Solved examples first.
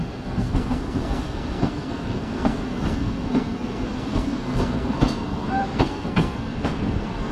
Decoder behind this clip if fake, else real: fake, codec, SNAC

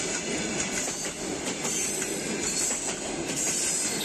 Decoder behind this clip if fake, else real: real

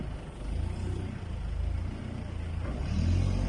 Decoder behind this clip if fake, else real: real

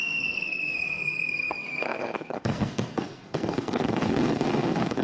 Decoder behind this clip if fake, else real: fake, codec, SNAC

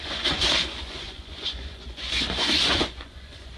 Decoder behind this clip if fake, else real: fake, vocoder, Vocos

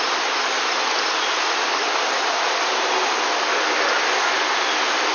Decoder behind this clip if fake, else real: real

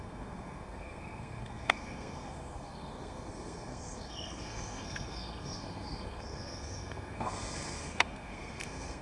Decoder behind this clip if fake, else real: fake, codec, SNAC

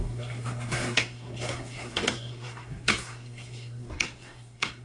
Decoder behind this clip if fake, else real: fake, codec, SNAC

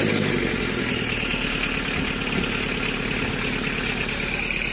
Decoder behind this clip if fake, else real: real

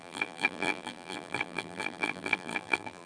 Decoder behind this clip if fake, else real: fake, vocoder, BigVGAN v2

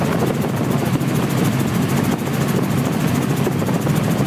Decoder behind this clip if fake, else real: real